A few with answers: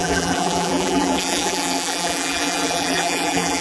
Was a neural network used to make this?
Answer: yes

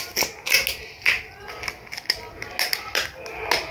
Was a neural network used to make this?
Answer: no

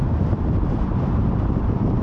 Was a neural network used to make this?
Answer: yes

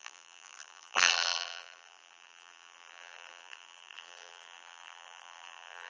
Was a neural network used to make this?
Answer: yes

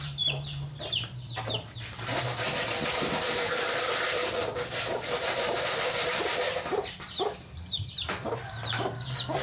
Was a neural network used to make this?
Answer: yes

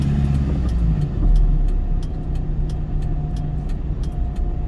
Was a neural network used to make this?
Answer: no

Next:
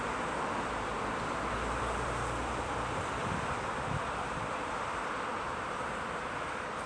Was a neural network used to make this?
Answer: yes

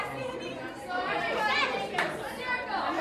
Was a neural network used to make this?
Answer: no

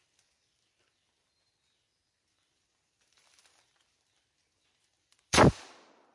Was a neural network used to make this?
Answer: yes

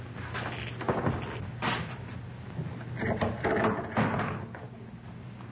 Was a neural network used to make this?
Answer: no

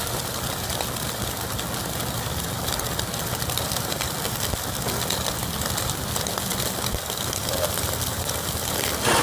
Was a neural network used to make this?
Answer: no